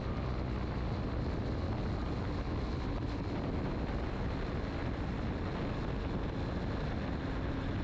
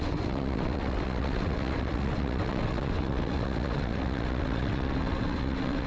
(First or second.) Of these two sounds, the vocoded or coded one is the second